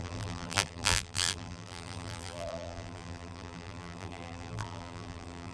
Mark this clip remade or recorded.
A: remade